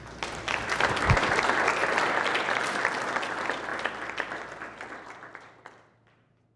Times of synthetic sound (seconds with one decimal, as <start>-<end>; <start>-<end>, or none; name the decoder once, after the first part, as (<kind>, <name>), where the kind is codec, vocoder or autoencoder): none